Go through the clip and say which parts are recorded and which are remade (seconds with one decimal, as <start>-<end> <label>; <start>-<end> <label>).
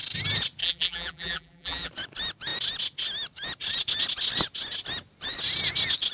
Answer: 0.0-0.6 recorded; 0.6-1.9 remade; 1.9-6.1 recorded